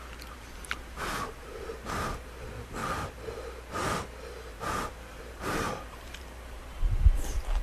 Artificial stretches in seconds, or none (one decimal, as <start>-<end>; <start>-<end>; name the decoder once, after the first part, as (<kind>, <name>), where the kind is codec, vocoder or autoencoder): 0.0-2.8 (vocoder, BigVGAN v2); 4.5-7.6